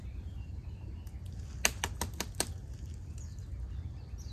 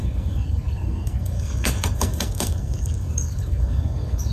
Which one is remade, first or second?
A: second